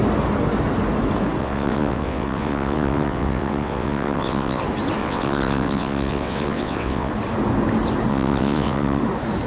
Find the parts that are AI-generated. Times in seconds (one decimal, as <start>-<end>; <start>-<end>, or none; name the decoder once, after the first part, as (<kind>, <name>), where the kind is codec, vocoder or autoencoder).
1.4-4.6 (vocoder, WaveNeXt); 5.0-7.1; 8.1-9.0